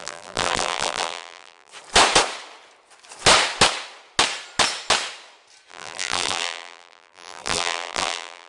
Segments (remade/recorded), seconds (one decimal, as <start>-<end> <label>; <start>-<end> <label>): 0.0-1.7 remade; 1.7-5.7 recorded; 5.7-8.5 remade